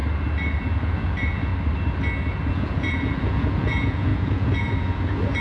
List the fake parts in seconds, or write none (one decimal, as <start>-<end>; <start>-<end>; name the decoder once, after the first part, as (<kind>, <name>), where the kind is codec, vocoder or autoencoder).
0.8-1.5 (vocoder, Vocos); 2.5-5.4

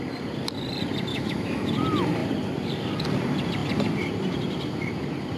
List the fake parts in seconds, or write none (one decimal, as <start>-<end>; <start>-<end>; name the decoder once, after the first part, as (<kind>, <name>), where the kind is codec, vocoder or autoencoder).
1.1-1.7 (autoencoder, DAC-VAE)

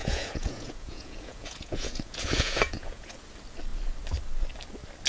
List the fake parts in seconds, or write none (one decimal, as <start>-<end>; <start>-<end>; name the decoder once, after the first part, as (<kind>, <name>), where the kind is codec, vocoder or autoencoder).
0.0-3.1 (vocoder, Vocos)

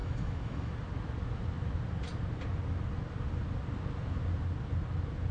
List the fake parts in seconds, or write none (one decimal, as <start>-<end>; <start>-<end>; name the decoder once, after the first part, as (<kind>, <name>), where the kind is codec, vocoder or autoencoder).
0.0-0.7 (autoencoder, DAC-VAE)

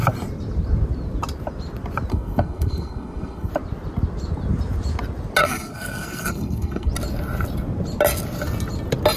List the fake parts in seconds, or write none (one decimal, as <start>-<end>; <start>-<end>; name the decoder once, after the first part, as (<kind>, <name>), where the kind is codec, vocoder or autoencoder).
2.1-3.5 (codec, SNAC); 5.4-6.9